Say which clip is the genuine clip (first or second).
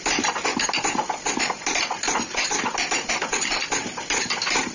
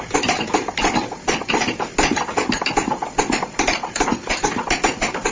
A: second